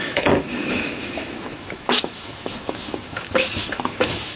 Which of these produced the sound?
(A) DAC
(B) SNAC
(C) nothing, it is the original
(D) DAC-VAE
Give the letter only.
D